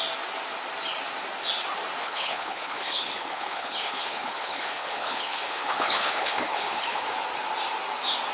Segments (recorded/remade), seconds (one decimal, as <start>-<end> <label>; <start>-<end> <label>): 0.0-2.0 recorded; 2.0-7.0 remade; 7.0-8.3 recorded